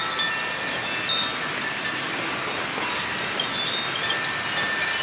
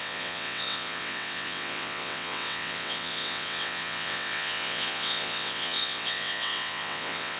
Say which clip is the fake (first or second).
second